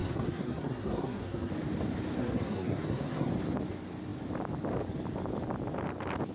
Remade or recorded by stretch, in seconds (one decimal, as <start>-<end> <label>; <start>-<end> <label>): 0.0-1.5 remade; 1.5-2.2 recorded; 2.2-3.3 remade; 3.3-6.3 recorded